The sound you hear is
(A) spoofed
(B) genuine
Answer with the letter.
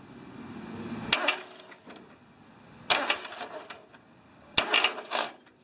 B